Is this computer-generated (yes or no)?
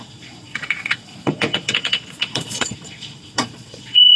yes